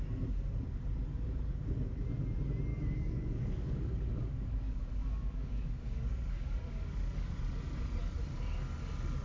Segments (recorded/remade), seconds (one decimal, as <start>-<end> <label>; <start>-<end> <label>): 0.0-2.7 recorded; 2.7-7.3 remade; 7.3-9.2 recorded